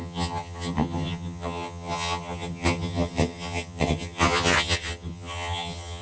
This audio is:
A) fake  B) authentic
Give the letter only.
A